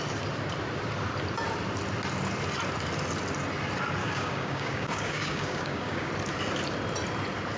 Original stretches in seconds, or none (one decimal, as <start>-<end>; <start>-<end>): 0.0-4.0; 6.1-7.6